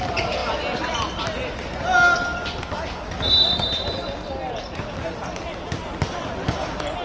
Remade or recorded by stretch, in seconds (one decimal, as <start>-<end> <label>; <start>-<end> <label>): 0.0-7.0 recorded